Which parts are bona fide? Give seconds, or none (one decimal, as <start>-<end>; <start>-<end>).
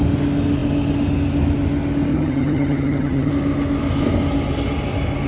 0.0-2.1; 3.3-5.3